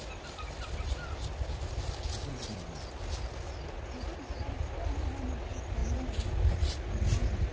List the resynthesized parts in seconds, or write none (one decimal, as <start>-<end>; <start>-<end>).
none